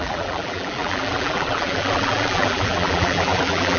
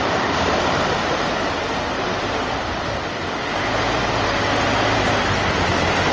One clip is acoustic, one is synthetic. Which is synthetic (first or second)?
first